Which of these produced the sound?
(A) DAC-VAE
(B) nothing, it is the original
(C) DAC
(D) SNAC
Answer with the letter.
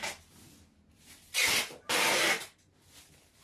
B